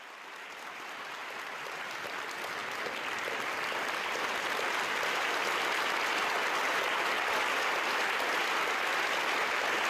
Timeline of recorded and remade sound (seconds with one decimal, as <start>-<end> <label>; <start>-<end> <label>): 0.0-1.2 recorded; 1.2-1.8 remade; 1.8-9.9 recorded